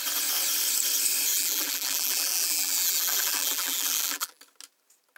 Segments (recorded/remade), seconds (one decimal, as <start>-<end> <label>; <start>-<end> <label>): 0.0-1.3 recorded; 1.3-4.4 remade; 4.4-5.2 recorded